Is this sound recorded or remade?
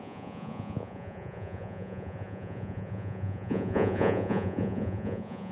remade